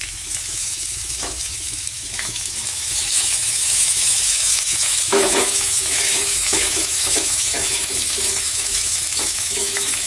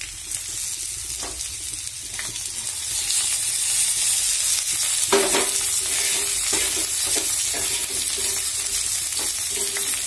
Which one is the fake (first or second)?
first